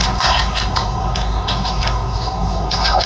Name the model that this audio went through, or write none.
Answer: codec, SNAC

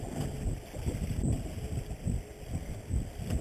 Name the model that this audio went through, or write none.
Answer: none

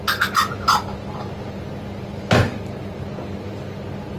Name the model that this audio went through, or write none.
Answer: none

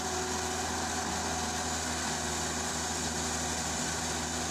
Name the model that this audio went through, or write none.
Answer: none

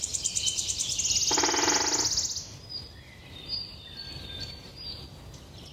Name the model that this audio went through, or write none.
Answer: none